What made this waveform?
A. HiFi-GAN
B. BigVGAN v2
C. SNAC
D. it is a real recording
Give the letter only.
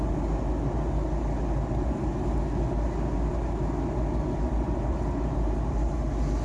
D